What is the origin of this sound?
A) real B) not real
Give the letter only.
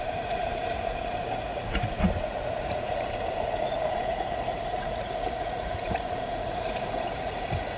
B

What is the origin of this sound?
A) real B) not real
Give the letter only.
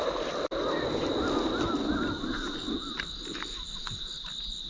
A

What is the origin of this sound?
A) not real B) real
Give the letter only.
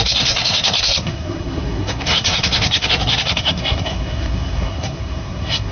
A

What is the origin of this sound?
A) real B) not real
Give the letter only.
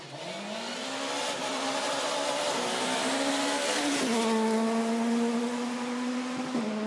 A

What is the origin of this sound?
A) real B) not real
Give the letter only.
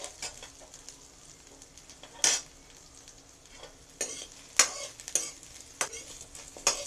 A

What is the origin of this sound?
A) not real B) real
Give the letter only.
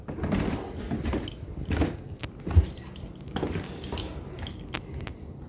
B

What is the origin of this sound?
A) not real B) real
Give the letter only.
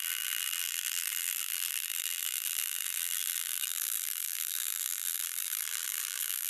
A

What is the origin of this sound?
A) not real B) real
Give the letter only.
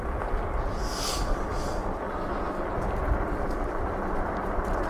B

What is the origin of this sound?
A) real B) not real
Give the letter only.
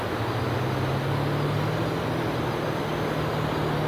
A